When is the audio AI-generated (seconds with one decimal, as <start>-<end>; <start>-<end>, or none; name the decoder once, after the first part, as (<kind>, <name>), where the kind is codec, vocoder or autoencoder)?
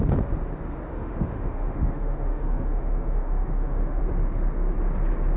0.9-4.0 (autoencoder, DAC-VAE)